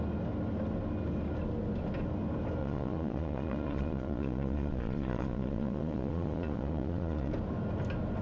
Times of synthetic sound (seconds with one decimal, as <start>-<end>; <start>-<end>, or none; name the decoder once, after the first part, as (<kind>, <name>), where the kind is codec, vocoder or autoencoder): 2.6-7.3 (vocoder, Vocos)